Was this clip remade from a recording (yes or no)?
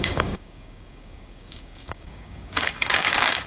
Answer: yes